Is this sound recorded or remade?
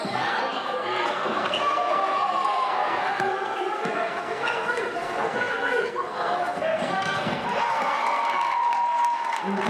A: remade